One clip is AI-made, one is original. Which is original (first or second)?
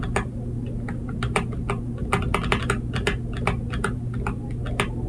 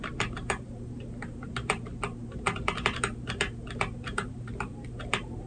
first